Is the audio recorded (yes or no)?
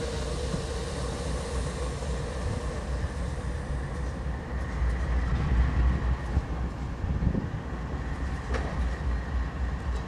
yes